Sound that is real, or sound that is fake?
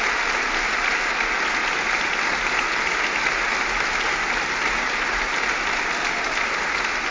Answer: real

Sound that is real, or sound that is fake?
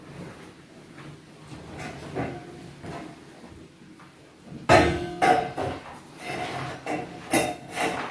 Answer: real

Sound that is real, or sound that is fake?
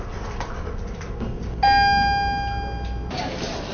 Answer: real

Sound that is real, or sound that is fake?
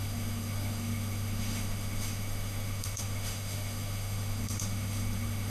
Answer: fake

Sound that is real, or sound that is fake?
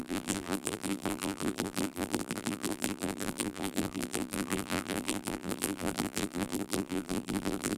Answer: fake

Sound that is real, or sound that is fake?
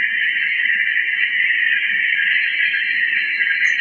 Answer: real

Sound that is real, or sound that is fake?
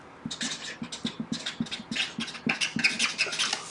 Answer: real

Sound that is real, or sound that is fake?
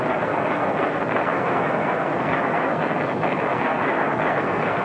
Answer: fake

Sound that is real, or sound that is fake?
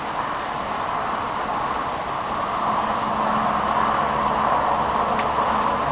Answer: real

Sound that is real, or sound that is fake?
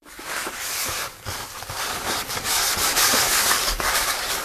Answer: fake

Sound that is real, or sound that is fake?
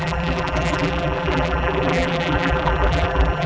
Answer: fake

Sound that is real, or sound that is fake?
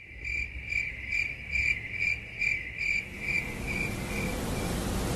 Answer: real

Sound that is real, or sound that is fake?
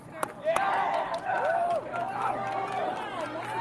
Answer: real